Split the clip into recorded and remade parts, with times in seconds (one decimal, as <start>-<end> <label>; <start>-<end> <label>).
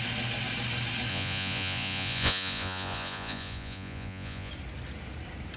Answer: 0.0-1.1 recorded; 1.1-4.5 remade; 4.5-5.6 recorded